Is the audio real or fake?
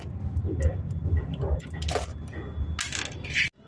real